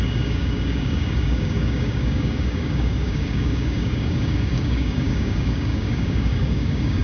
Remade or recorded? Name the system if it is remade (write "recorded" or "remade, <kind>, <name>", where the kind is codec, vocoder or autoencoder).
remade, codec, DAC